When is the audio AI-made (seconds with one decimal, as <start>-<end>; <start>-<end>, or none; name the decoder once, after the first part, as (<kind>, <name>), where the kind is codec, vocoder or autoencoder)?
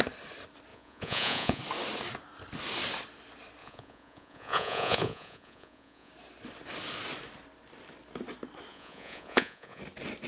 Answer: 0.7-1.6 (vocoder, Vocos); 3.6-6.1; 8.7-9.8